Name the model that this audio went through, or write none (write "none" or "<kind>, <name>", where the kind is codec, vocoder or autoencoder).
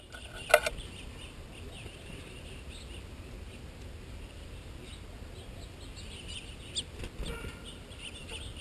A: none